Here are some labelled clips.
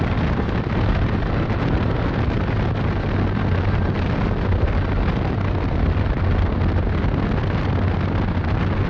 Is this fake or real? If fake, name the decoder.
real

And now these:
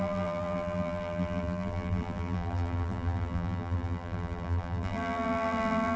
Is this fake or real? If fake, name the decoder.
fake, vocoder, BigVGAN v2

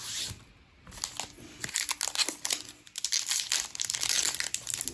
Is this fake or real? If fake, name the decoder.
real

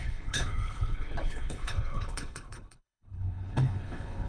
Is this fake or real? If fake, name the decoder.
fake, codec, HILCodec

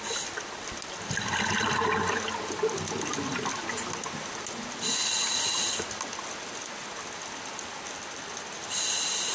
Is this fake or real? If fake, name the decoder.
real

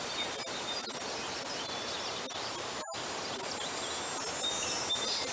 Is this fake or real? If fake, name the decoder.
real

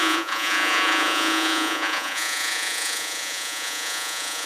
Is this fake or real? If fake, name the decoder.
fake, vocoder, Vocos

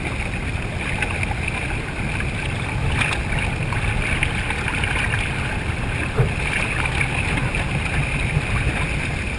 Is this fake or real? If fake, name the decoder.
real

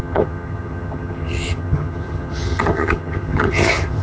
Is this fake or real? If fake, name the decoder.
fake, vocoder, HiFi-GAN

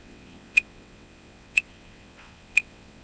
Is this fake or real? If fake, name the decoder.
fake, vocoder, WaveNeXt